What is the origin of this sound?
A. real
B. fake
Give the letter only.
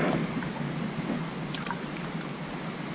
A